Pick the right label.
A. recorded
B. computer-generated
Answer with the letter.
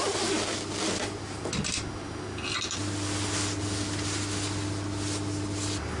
A